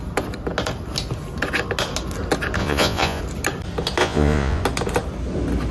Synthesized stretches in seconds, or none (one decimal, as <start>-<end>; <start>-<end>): 2.6-3.2; 4.0-4.6